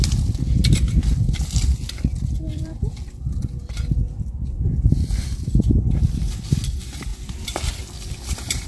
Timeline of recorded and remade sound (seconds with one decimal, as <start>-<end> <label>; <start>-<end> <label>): 0.0-2.5 recorded; 2.5-6.2 remade; 6.2-7.1 recorded; 7.1-8.7 remade

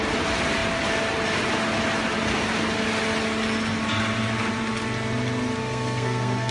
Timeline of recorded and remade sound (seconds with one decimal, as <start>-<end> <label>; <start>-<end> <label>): 0.0-5.6 recorded; 5.6-6.5 remade